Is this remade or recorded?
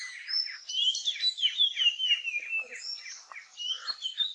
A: recorded